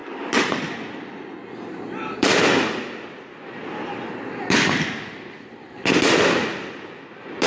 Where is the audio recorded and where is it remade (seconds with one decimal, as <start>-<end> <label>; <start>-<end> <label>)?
0.0-7.5 recorded